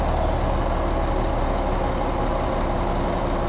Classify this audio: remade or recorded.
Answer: recorded